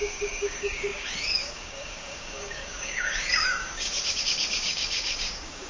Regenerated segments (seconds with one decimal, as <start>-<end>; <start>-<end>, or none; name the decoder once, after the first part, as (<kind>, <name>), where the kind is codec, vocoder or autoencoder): 0.0-5.7 (codec, DAC)